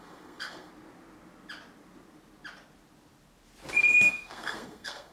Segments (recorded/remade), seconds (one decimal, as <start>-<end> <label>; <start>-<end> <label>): 0.0-0.7 remade; 0.7-3.8 recorded; 3.8-5.1 remade